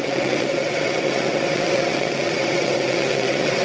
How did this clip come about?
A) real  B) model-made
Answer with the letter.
B